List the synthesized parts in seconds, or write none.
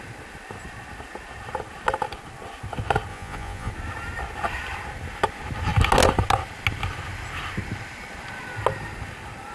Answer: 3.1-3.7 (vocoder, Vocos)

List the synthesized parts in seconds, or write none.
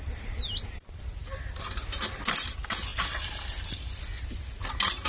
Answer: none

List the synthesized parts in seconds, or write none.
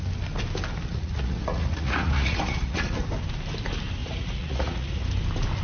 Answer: 0.9-3.0 (vocoder, Vocos); 4.0-5.0